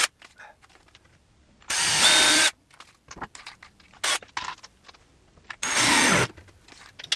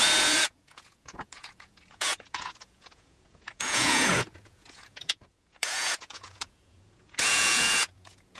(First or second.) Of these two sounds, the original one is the first